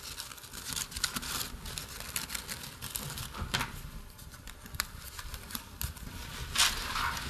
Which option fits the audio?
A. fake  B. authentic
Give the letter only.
B